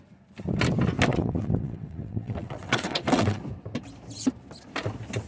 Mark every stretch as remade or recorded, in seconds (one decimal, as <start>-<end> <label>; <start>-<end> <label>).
0.0-1.1 recorded; 1.1-3.4 remade; 3.4-5.3 recorded